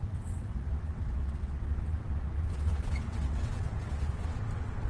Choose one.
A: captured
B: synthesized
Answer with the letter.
B